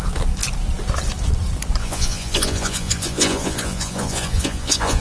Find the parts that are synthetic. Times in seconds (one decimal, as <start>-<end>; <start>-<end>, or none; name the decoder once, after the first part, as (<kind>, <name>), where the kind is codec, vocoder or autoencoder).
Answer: 1.8-5.0 (vocoder, Vocos)